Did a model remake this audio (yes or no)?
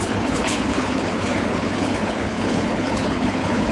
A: yes